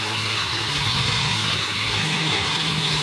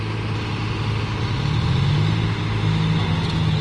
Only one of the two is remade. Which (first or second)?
first